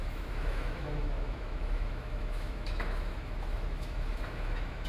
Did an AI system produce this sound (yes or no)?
yes